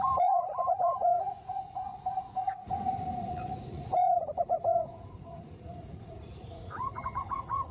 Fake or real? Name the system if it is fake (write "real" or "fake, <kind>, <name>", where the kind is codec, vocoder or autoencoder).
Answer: fake, vocoder, Vocos